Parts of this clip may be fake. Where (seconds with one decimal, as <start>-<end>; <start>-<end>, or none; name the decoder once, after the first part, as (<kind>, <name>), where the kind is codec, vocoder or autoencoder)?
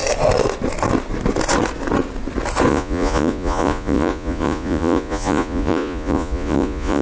2.7-7.0 (vocoder, Vocos)